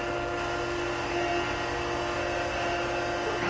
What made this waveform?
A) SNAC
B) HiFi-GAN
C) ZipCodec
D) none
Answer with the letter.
D